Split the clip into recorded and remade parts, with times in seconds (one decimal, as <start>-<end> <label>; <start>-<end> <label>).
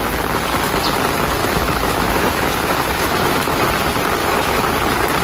0.0-1.4 recorded; 1.4-3.7 remade; 3.7-4.2 recorded; 4.2-4.8 remade; 4.8-5.2 recorded